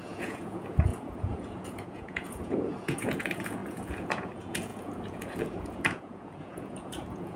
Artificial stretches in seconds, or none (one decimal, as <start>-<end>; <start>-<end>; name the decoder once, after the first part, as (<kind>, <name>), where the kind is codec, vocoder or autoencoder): 0.0-7.4 (vocoder, Vocos)